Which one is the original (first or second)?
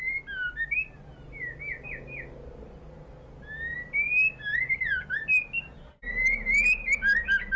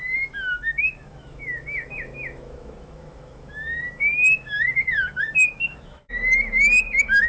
first